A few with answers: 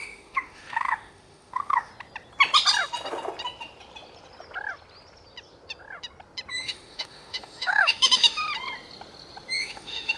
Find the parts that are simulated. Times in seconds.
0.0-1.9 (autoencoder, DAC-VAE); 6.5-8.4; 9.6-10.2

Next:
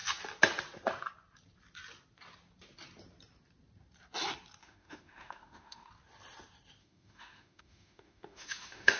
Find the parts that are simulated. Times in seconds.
4.6-5.9 (autoencoder, DAC-VAE); 6.8-9.0

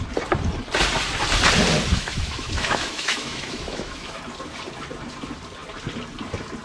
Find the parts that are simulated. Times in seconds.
1.9-4.2 (autoencoder, DAC-VAE)

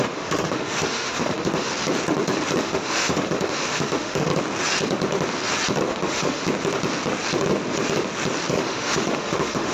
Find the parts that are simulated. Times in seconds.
0.0-1.7 (autoencoder, DAC-VAE); 2.6-4.3; 5.9-6.4; 8.5-9.7

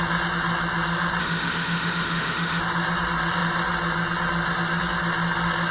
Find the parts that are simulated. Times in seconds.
1.2-2.6 (autoencoder, DAC-VAE)

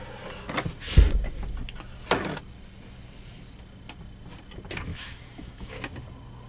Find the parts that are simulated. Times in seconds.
4.9-5.8 (autoencoder, DAC-VAE)

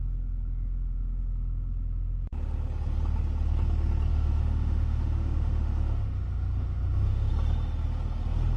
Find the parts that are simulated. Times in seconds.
4.1-7.3 (autoencoder, DAC-VAE)